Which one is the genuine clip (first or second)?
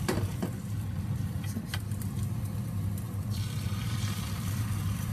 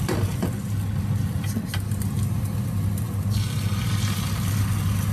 second